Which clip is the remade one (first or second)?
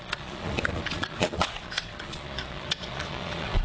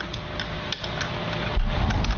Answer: first